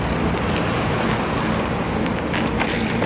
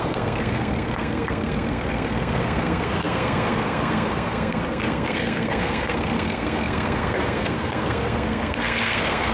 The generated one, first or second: second